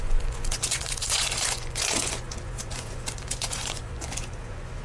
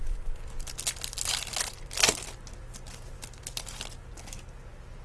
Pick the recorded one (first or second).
second